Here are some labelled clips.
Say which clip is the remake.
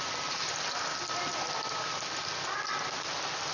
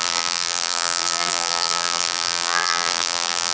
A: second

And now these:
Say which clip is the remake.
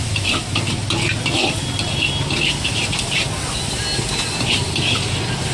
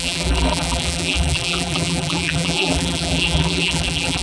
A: second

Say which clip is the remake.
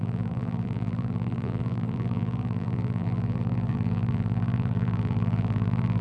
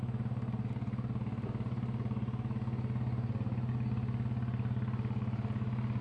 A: first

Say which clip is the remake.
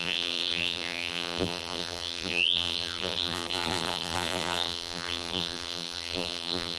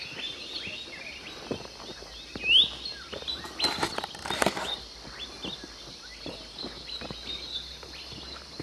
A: first